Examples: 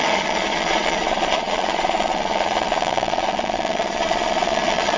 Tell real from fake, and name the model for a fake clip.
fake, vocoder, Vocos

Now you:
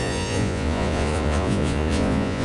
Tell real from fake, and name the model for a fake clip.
fake, vocoder, Vocos